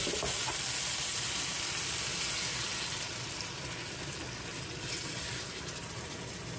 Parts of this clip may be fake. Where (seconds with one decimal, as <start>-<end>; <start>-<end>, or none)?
none